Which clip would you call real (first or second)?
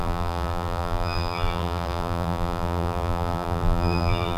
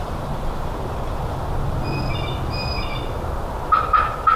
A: second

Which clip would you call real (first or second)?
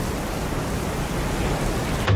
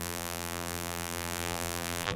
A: first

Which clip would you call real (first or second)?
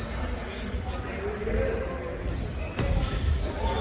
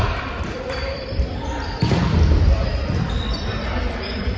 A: first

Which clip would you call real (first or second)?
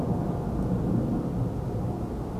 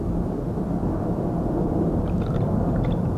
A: first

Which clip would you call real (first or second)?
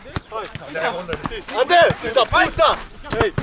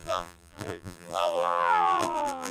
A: first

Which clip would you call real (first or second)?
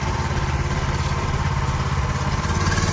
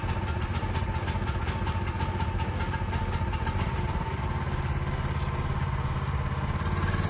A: second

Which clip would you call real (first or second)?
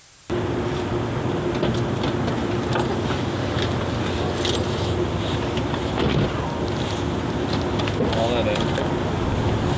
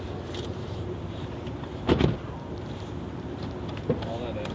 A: first